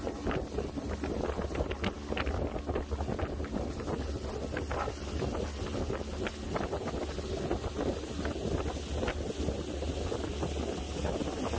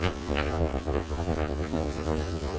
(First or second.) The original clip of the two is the first